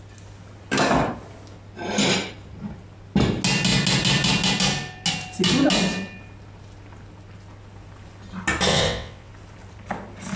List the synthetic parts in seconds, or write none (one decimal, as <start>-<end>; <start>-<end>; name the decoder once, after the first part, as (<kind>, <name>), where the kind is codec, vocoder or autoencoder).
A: 8.7-9.3 (vocoder, WaveNeXt)